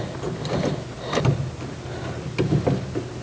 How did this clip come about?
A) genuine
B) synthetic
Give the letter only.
A